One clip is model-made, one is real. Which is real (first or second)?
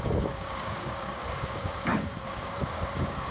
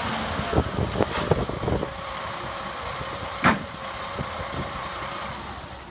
second